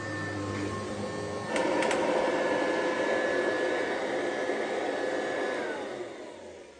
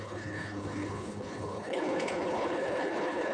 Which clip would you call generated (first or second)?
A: second